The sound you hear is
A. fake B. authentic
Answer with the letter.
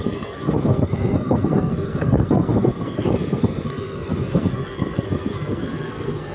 A